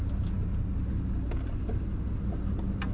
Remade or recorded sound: recorded